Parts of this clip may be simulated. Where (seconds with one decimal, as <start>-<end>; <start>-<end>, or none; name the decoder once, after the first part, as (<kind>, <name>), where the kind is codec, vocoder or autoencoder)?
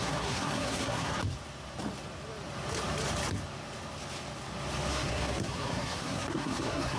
0.0-1.2 (codec, SNAC); 4.9-7.0